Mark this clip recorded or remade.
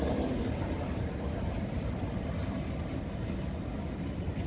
recorded